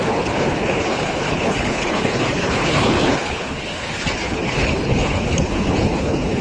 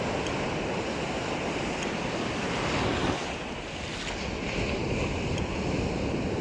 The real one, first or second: second